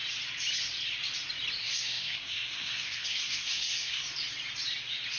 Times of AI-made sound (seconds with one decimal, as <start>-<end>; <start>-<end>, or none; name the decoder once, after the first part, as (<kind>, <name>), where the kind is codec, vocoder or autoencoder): 1.6-4.0 (codec, SNAC)